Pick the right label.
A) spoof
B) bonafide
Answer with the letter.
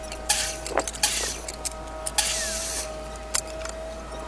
B